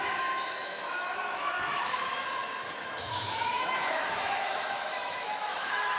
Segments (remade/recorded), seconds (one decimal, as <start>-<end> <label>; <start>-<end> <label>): 0.0-6.0 remade